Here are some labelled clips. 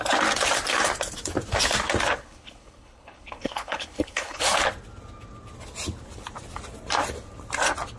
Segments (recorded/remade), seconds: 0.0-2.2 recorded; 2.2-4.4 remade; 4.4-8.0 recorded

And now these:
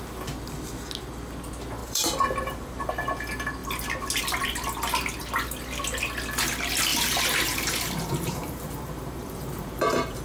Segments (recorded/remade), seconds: 0.0-1.8 recorded; 1.8-2.9 remade; 2.9-6.9 recorded; 6.9-10.2 remade

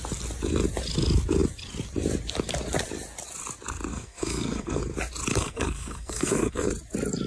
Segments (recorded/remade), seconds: 0.0-3.9 recorded; 3.9-4.8 remade; 4.8-5.3 recorded; 5.3-6.7 remade; 6.7-7.3 recorded

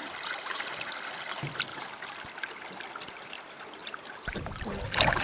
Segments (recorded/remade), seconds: 0.0-0.7 remade; 0.7-1.7 recorded; 1.7-2.3 remade; 2.3-3.8 recorded; 3.8-4.4 remade; 4.4-5.2 recorded

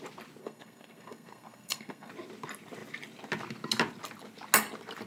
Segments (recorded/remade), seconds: 0.0-0.4 recorded; 0.4-2.1 remade; 2.1-5.1 recorded

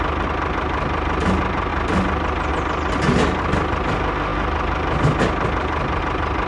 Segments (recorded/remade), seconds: 0.0-6.5 recorded

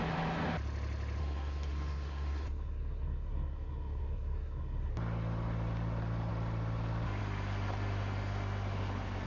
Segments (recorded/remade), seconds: 0.0-1.2 recorded; 1.2-4.9 remade; 4.9-9.3 recorded

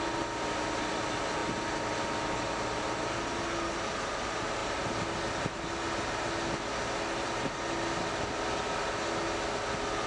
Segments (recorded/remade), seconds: 0.0-10.1 recorded